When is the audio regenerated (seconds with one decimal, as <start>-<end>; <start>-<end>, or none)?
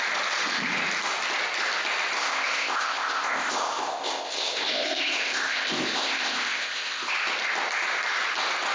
2.2-7.1